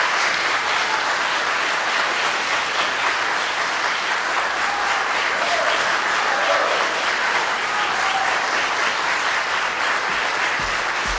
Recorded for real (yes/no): yes